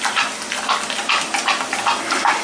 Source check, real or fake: real